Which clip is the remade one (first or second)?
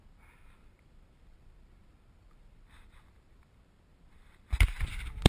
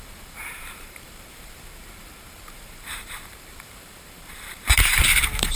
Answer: second